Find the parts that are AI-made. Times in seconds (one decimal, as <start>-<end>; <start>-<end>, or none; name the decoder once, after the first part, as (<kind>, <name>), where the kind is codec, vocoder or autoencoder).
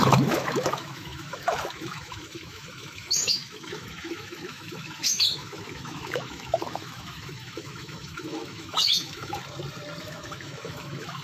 0.0-9.4 (autoencoder, DAC-VAE); 10.0-11.2